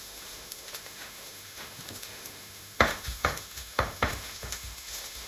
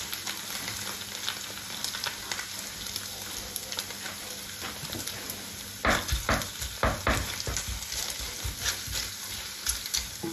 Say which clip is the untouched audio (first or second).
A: second